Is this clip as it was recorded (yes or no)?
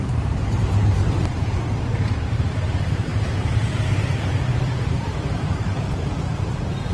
no